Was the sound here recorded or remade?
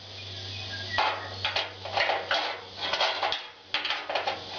recorded